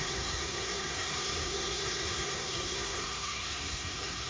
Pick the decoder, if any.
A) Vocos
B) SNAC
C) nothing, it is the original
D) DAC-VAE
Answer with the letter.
B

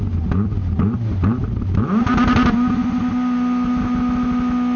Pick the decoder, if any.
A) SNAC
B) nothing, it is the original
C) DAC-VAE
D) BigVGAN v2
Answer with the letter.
B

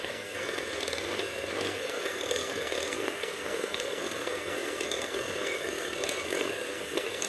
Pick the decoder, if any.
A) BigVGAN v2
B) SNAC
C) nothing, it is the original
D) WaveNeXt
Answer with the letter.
B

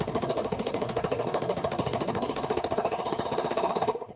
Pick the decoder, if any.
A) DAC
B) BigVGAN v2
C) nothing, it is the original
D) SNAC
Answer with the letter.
D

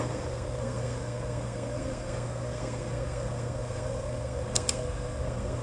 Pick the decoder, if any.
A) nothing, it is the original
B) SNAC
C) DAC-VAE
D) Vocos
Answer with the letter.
B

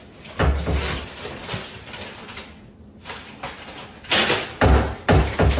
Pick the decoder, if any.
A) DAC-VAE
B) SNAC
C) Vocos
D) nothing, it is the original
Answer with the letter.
D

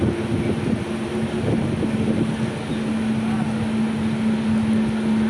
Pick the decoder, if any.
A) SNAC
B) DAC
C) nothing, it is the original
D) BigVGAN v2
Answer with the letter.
C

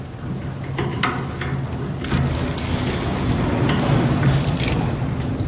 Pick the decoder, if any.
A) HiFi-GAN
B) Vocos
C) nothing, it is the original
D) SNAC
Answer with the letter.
C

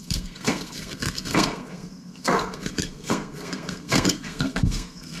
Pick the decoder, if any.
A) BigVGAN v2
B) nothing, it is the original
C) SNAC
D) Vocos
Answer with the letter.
C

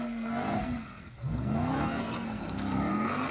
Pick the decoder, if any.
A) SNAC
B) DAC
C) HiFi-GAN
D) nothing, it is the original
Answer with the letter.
A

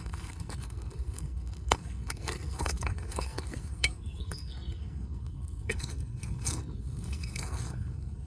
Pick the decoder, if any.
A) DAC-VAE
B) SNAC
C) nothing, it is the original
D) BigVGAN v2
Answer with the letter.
B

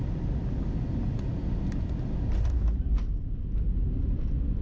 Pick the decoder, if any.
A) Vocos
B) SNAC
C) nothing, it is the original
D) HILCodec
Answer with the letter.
C